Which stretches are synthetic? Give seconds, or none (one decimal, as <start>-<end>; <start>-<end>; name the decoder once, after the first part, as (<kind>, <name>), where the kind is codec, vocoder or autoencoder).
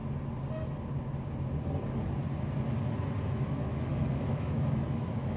3.2-5.4 (autoencoder, DAC-VAE)